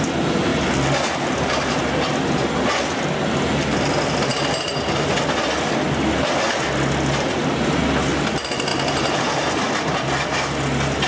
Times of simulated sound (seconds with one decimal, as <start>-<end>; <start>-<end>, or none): none